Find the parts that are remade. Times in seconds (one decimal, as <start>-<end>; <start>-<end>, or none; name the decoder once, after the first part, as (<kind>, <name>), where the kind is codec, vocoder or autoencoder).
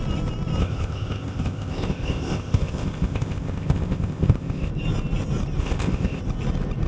0.6-4.7 (codec, ZipCodec); 5.6-6.2